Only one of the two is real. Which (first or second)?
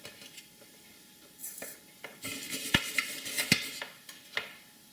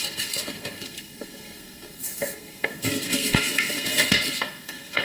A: first